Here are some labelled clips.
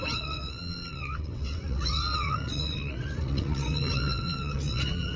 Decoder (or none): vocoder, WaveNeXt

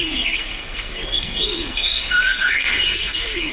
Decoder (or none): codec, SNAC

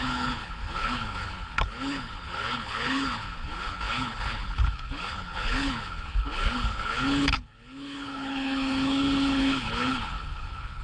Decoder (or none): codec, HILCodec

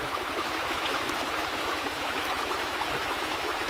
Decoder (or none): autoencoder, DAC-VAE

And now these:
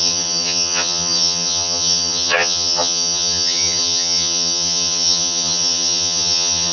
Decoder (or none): vocoder, HiFi-GAN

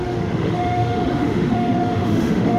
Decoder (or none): autoencoder, DAC-VAE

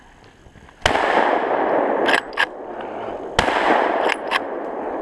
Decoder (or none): none